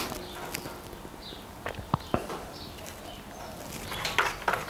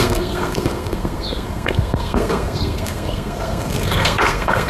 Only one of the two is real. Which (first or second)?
first